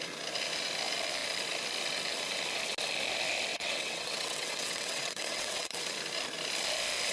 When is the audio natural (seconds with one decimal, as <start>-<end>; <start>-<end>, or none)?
0.0-3.5; 5.8-7.1